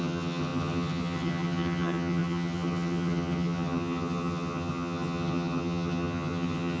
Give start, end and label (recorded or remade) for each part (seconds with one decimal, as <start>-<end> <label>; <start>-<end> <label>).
0.0-6.8 remade